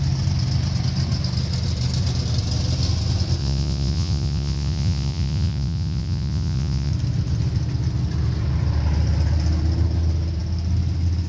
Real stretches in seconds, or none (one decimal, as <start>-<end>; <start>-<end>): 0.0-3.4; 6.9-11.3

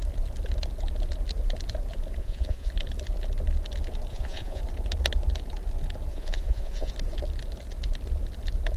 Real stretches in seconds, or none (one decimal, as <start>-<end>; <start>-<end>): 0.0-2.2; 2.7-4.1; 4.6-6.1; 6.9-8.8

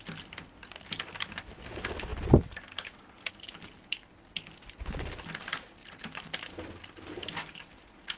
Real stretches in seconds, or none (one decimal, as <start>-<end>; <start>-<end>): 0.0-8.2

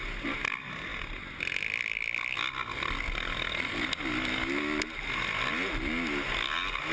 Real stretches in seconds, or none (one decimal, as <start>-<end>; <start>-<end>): 0.0-6.9

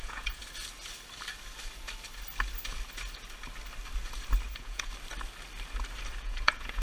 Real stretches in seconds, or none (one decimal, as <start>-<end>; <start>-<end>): 0.4-4.5; 4.9-6.2